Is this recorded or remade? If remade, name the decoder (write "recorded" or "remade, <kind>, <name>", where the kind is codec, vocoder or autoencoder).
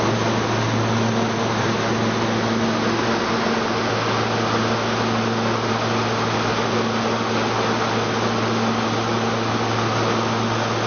recorded